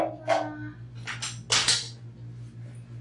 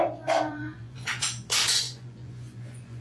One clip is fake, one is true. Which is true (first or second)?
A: first